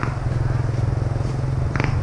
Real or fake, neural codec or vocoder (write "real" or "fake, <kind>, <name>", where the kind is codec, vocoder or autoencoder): real